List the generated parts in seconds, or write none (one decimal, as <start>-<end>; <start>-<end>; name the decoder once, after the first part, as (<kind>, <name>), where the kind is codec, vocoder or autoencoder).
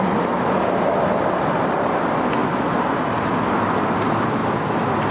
none